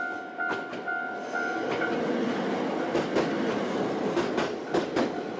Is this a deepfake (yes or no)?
no